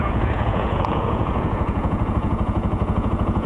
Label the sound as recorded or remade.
remade